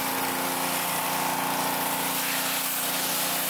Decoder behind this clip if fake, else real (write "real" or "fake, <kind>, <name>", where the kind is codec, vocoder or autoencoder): real